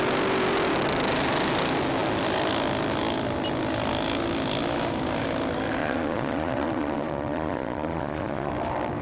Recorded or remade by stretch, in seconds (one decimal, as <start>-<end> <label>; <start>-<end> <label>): 0.0-5.8 recorded; 5.8-8.5 remade; 8.5-9.0 recorded